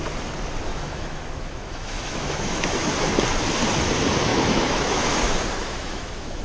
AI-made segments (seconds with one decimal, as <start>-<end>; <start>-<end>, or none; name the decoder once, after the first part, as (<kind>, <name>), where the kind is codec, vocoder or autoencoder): 0.7-2.9 (autoencoder, DAC-VAE); 4.3-5.1; 5.6-6.4